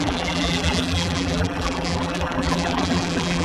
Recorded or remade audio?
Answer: remade